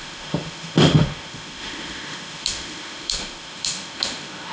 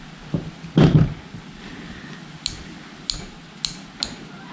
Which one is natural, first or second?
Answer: second